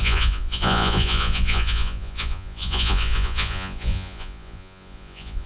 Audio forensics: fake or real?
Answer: fake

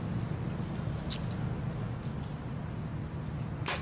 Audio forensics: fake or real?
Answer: real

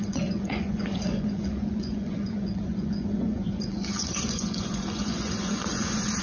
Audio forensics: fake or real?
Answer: fake